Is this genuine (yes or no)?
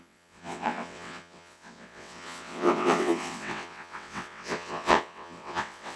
no